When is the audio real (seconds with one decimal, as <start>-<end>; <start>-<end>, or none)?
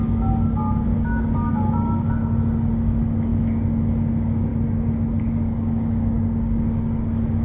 4.5-5.2